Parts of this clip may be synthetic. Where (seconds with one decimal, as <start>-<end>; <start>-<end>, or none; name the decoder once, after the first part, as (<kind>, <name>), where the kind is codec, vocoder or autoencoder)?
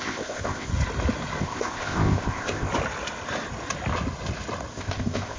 0.0-0.7 (codec, ZipCodec); 1.4-2.7; 4.7-5.4